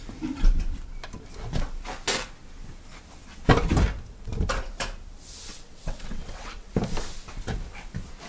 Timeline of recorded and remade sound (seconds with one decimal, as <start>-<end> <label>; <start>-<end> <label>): 0.0-5.5 recorded; 5.5-6.7 remade; 6.7-8.3 recorded